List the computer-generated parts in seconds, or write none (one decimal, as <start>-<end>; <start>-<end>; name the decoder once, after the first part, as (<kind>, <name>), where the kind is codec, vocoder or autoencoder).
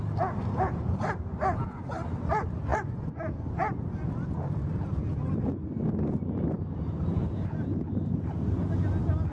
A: 2.7-3.2 (vocoder, Vocos)